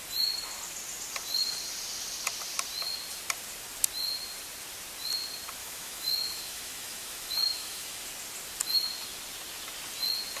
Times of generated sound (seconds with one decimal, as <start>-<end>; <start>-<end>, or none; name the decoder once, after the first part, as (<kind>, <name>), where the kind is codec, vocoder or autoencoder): 5.6-8.0 (autoencoder, DAC-VAE)